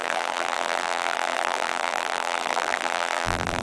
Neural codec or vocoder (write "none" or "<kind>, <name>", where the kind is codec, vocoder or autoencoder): vocoder, BigVGAN v2